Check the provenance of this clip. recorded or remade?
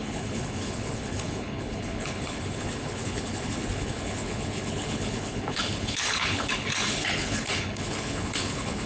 remade